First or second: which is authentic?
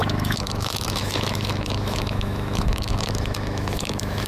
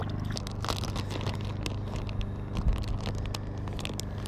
second